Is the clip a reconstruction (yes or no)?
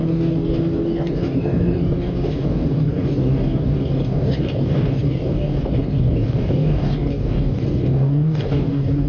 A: yes